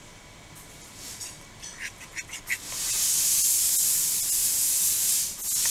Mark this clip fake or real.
real